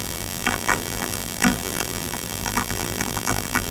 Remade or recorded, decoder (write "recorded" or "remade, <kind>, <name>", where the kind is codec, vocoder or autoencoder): remade, vocoder, BigVGAN v2